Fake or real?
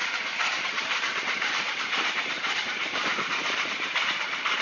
fake